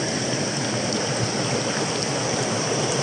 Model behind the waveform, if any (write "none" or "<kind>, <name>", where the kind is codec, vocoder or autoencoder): none